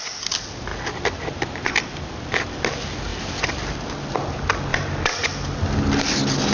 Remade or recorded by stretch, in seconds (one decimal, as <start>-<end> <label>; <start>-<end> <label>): 0.0-0.7 recorded; 0.7-2.6 remade; 2.6-3.1 recorded; 3.1-4.1 remade; 4.1-6.5 recorded